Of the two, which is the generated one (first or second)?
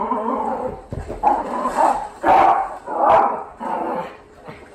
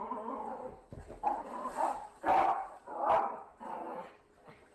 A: first